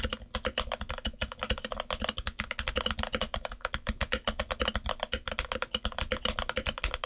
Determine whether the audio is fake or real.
real